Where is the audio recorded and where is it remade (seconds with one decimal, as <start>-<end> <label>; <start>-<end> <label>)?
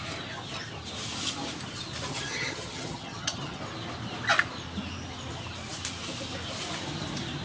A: 0.0-2.1 recorded; 2.1-3.6 remade; 3.6-7.4 recorded